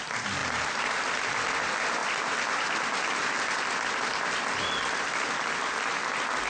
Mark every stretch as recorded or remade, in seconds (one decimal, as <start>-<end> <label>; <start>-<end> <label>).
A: 0.0-6.5 recorded

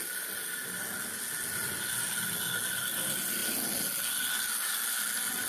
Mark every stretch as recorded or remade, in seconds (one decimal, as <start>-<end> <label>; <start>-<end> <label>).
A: 0.0-5.5 recorded

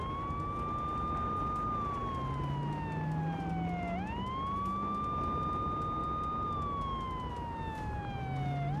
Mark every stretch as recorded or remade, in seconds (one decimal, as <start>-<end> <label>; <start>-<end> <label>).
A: 0.0-8.8 recorded